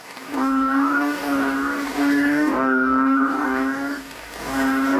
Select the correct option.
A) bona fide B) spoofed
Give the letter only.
B